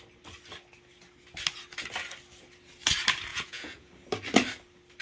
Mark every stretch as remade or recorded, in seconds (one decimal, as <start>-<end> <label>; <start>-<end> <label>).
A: 0.0-3.3 recorded; 3.3-3.9 remade; 3.9-5.0 recorded